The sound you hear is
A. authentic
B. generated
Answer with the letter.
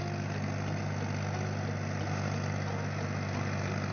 A